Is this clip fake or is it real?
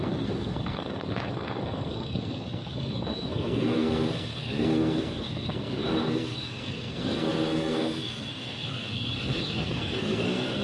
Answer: fake